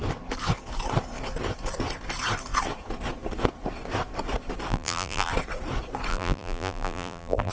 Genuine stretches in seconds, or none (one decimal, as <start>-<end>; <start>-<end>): 0.0-4.7; 5.3-6.1